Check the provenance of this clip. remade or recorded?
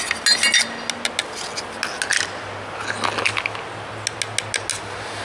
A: recorded